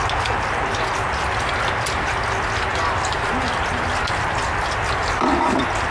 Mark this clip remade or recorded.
recorded